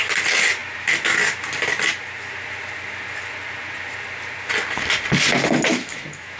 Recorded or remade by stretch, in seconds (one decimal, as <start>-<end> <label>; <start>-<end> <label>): 0.0-5.7 recorded; 5.7-6.4 remade